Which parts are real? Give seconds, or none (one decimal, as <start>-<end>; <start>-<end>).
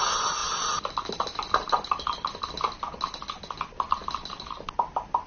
0.0-5.3